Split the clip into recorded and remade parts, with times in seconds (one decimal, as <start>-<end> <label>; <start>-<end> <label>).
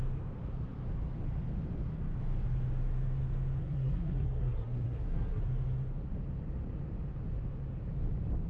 0.0-3.6 recorded; 3.6-5.4 remade; 5.4-8.5 recorded